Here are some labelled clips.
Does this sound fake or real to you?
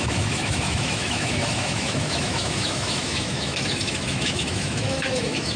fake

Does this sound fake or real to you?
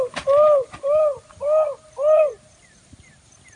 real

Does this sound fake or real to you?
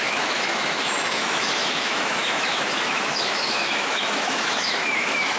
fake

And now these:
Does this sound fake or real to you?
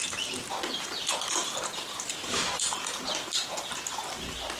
real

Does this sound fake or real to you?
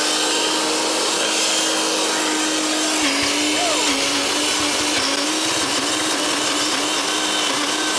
real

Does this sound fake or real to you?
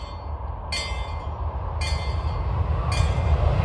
real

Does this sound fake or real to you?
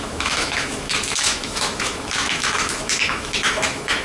fake